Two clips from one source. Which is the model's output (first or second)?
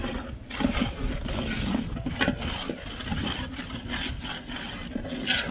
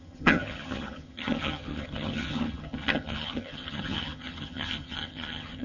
second